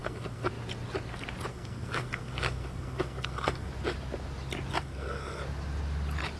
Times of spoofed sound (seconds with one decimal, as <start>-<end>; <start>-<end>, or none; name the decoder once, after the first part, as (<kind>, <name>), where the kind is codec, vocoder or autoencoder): 0.0-0.5 (codec, SNAC); 1.5-3.7; 4.8-5.4